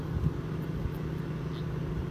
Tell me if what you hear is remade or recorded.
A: recorded